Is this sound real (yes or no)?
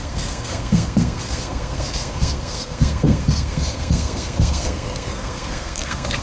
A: no